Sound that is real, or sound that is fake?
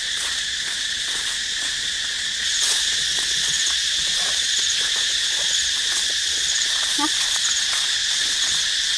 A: fake